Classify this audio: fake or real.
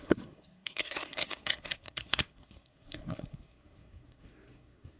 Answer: fake